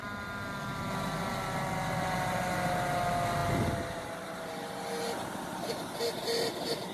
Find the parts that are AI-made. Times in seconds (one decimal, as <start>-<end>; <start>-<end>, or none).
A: none